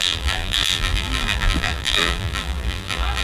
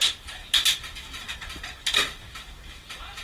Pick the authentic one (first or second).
second